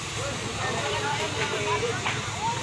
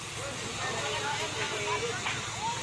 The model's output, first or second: first